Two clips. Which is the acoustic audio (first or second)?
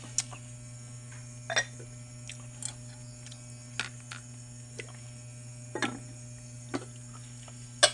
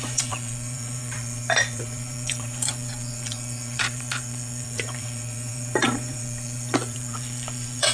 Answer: first